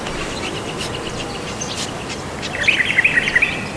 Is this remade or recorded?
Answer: recorded